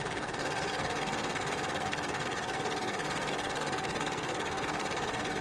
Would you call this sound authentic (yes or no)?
no